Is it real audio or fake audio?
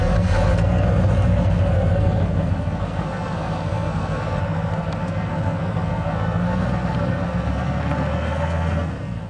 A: fake